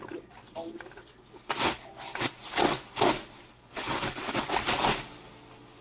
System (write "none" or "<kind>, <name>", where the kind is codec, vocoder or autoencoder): none